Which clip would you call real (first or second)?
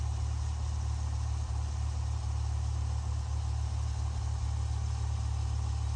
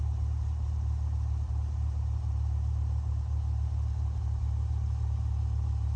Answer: first